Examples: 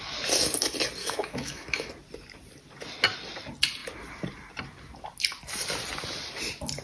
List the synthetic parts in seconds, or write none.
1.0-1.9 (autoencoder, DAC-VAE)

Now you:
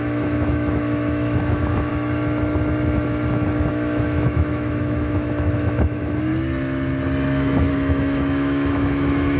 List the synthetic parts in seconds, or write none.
0.0-1.9 (autoencoder, DAC-VAE); 3.7-6.3; 7.7-9.4

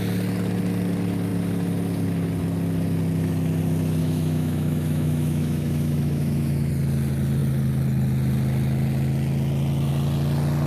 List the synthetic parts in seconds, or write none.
4.0-6.7 (autoencoder, DAC-VAE)

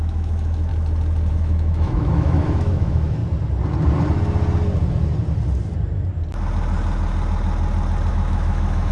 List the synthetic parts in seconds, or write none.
0.0-0.7 (autoencoder, DAC-VAE); 1.3-3.2; 8.1-8.9

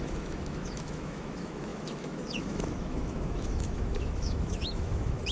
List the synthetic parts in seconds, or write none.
0.0-5.3 (autoencoder, DAC-VAE)

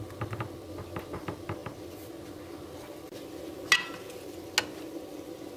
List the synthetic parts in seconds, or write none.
none